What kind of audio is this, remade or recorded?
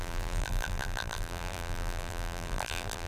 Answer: remade